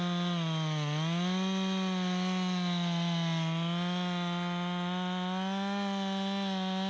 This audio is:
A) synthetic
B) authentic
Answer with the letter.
B